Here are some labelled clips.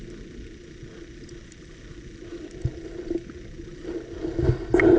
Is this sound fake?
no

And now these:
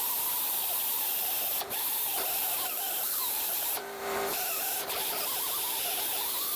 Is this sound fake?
yes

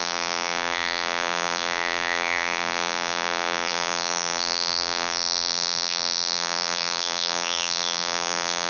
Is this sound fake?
yes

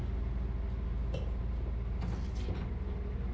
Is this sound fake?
no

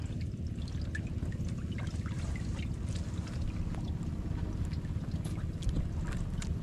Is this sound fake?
no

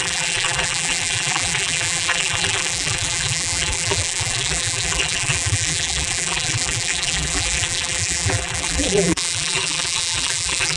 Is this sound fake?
yes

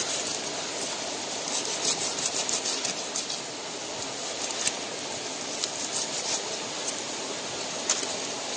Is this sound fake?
no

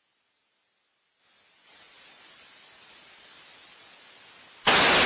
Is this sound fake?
no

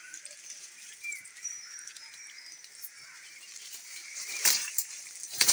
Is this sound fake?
yes